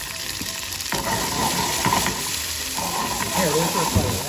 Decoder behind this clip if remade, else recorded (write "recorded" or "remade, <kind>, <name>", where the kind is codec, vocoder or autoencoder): remade, vocoder, BigVGAN v2